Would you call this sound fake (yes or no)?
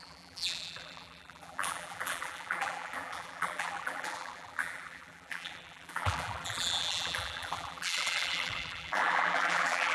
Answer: yes